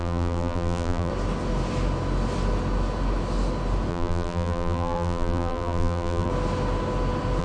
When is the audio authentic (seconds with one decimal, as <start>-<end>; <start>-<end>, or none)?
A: 1.1-3.9; 6.3-7.4

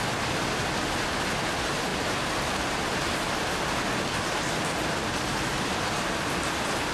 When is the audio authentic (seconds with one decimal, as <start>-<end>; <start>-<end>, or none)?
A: 0.0-6.9

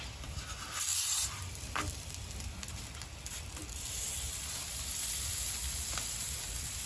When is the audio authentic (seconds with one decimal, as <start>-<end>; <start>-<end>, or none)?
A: 0.0-0.9; 2.4-3.6; 5.2-6.9

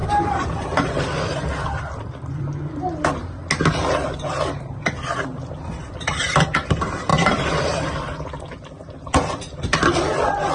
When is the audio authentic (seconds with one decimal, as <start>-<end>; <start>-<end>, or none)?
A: 1.0-10.5

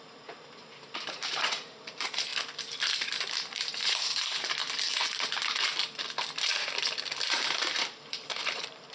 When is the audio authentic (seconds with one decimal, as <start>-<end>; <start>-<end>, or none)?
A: 2.3-3.3; 4.6-7.3

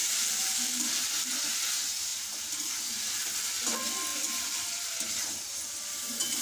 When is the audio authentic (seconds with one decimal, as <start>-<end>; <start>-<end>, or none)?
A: 1.0-2.1; 2.8-4.1; 5.8-6.4

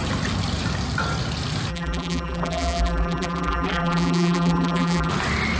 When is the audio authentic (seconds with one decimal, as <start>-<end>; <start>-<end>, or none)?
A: 0.0-1.7; 5.1-5.6

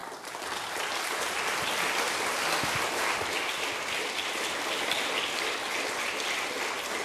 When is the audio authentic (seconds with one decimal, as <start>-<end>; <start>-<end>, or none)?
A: 0.0-7.0